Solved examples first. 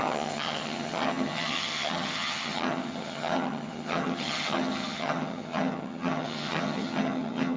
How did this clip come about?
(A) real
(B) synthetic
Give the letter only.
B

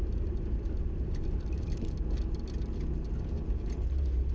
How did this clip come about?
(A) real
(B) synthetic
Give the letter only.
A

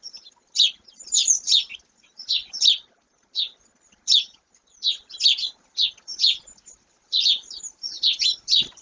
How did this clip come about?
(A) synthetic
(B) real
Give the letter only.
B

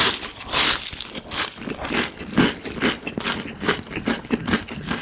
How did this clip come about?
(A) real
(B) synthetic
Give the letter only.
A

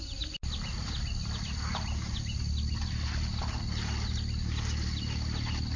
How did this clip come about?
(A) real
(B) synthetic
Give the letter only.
A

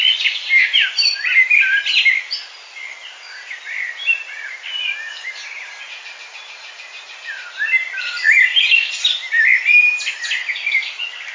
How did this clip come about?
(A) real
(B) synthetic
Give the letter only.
A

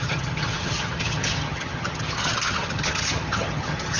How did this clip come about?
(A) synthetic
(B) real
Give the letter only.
A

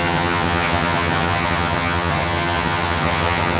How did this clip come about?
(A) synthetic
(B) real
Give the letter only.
A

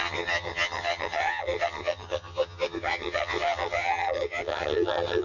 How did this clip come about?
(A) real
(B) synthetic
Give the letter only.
B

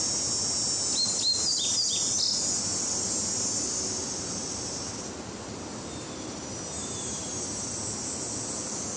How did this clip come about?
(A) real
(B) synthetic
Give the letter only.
A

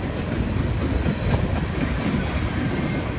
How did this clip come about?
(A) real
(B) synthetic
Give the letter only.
A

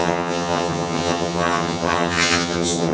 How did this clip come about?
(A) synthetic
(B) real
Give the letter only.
A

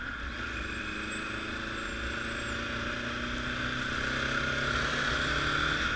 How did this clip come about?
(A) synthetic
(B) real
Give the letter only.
B